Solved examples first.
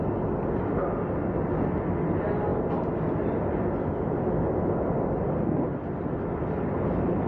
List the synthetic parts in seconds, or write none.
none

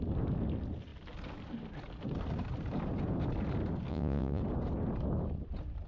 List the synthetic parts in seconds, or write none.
3.9-4.4 (vocoder, Vocos)

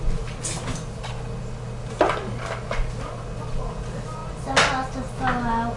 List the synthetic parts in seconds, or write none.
none

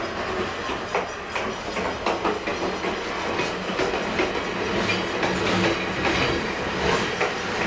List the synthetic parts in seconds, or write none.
none